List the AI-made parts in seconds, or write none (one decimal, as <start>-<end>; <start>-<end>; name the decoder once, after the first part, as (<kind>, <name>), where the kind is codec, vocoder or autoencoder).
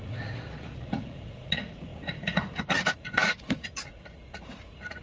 0.0-5.0 (vocoder, Vocos)